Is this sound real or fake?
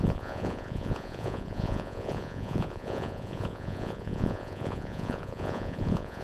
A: fake